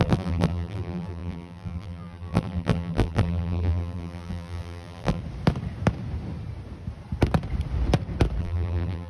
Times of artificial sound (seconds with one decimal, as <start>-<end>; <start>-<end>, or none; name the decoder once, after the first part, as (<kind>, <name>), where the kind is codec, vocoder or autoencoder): 0.0-5.2 (vocoder, BigVGAN v2); 8.4-9.1